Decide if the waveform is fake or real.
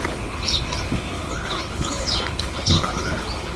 fake